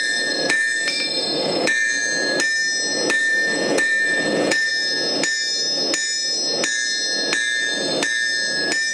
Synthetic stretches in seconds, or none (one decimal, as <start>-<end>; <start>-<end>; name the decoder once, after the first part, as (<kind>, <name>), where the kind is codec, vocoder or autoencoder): 0.0-2.0 (vocoder, Vocos); 3.2-4.7